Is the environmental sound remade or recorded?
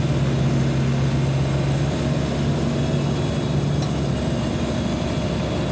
recorded